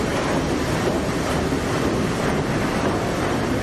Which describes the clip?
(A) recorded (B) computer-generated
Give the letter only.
B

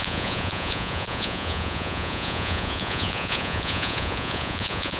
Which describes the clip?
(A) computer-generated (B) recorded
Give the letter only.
A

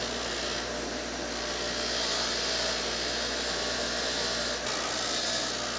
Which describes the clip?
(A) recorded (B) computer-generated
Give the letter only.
A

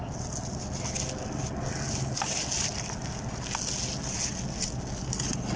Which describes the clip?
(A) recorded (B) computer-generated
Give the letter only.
A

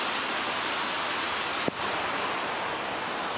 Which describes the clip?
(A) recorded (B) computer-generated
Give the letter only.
A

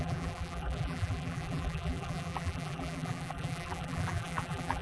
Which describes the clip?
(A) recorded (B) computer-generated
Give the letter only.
B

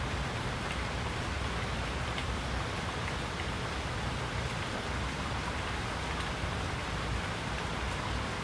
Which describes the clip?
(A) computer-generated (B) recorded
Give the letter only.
B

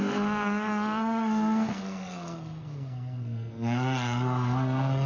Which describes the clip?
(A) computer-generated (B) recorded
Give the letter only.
A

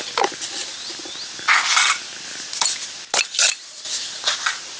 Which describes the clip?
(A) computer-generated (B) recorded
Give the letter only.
B